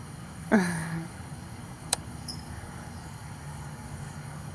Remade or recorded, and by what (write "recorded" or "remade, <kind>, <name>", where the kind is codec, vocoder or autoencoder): remade, codec, DAC